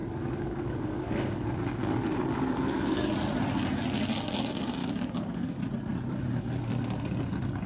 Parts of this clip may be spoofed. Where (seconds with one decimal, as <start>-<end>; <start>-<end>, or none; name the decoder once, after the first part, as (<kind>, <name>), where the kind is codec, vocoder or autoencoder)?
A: 0.0-3.1 (codec, DAC); 4.8-5.7